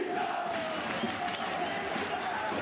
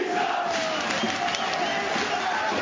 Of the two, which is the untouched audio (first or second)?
second